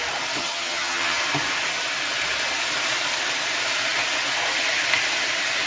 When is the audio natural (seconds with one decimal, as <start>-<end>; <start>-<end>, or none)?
0.0-0.4; 1.2-5.7